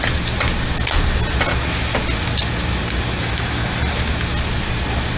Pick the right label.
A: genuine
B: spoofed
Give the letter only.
A